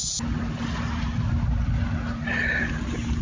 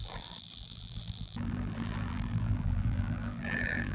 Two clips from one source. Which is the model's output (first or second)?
second